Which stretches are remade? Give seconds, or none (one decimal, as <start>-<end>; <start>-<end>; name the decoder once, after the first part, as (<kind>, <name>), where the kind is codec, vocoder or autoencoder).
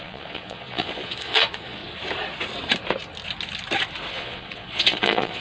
0.0-1.8 (vocoder, Vocos); 4.1-5.4